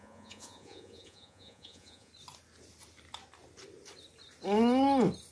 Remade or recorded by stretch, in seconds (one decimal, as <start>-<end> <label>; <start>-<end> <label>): 0.0-2.1 remade; 2.1-5.3 recorded